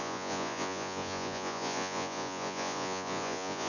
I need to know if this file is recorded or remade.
remade